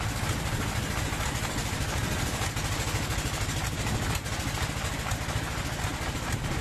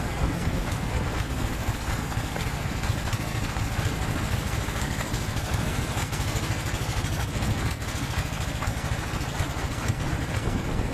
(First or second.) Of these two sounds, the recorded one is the first